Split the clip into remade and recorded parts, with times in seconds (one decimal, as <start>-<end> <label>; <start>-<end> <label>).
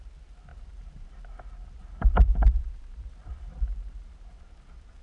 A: 0.0-0.5 recorded; 0.5-1.1 remade; 1.1-1.8 recorded; 1.8-4.5 remade; 4.5-5.0 recorded